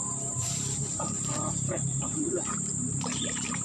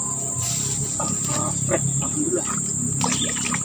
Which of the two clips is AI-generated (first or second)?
first